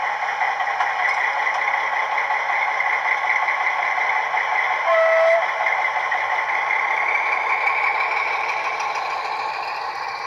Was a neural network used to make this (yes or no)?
no